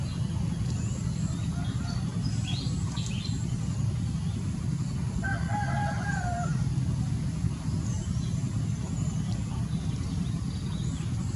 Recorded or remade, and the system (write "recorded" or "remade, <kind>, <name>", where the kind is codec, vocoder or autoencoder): recorded